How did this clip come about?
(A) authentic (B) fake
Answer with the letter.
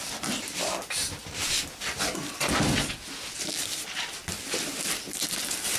A